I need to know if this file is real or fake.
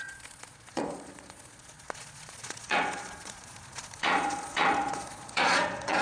fake